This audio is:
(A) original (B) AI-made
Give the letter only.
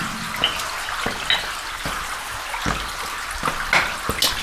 A